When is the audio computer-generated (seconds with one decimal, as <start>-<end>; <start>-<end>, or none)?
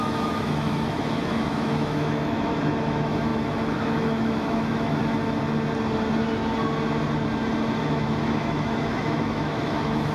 0.0-5.0; 7.8-10.1